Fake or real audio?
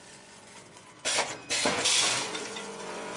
fake